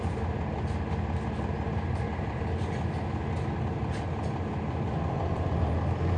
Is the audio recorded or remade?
recorded